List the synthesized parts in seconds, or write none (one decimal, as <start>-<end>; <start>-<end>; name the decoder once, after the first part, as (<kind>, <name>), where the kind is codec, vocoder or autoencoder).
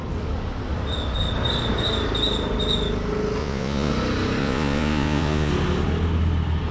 3.4-3.9 (vocoder, Vocos); 4.4-5.5